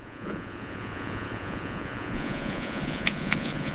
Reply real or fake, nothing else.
fake